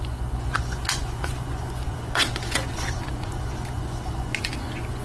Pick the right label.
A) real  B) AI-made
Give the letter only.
B